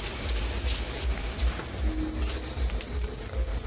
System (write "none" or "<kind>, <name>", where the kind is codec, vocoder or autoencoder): none